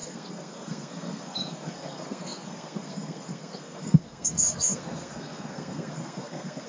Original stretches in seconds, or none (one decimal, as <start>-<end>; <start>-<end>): none